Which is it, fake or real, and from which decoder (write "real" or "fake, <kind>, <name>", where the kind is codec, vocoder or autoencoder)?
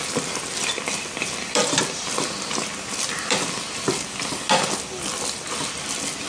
real